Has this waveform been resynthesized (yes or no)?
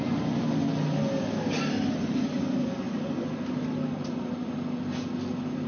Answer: no